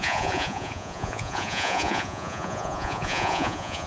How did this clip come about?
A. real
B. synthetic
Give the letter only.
B